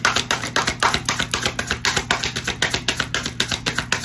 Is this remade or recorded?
recorded